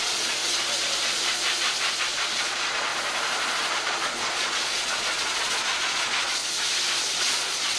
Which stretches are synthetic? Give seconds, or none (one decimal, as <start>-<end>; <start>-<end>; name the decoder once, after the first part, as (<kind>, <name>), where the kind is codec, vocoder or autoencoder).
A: 0.0-0.4 (vocoder, Vocos); 2.0-2.9; 3.7-6.4; 7.1-7.8